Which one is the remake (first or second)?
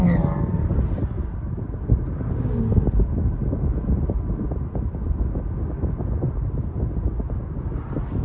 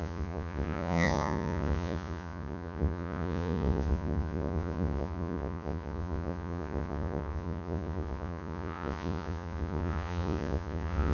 second